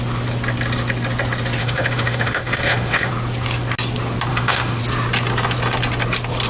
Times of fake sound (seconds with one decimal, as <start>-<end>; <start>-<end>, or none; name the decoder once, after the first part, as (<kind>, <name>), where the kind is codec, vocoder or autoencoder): 1.6-3.1 (autoencoder, DAC-VAE); 4.3-4.8